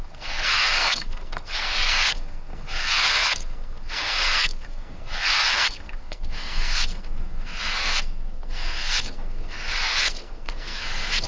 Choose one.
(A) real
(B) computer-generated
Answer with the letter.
B